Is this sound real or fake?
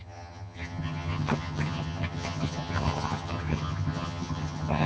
fake